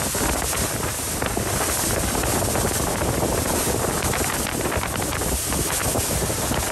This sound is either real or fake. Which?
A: real